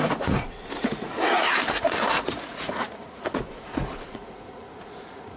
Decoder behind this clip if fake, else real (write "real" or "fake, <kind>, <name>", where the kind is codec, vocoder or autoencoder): fake, vocoder, Vocos